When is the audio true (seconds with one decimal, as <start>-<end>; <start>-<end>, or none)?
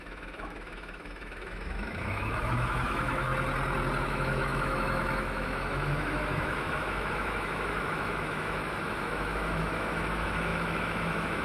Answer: 3.3-4.0